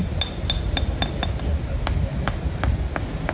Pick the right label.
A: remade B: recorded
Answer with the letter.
B